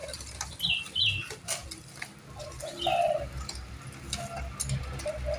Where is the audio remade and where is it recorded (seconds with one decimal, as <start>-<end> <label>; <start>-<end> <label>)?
0.0-5.4 recorded

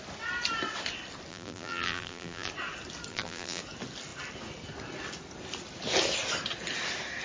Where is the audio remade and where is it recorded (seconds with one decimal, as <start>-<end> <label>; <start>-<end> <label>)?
0.0-1.3 recorded; 1.3-2.5 remade; 2.5-3.1 recorded; 3.1-3.6 remade; 3.6-7.2 recorded

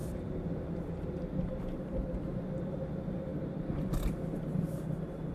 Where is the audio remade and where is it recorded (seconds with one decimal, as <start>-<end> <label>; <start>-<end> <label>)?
0.0-3.3 remade; 3.3-5.3 recorded

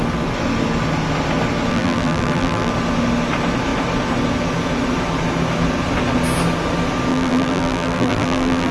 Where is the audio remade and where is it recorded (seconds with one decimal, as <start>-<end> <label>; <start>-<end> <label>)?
0.0-1.7 recorded; 1.7-2.7 remade; 2.7-7.1 recorded; 7.1-8.7 remade